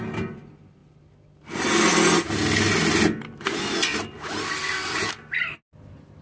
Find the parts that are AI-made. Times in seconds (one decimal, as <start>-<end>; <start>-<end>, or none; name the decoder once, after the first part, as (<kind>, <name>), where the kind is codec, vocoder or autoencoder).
none